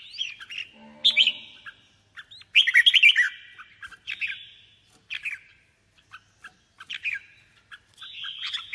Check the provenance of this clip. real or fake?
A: real